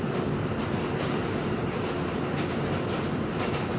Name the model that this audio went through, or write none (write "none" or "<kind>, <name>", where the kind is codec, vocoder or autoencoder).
none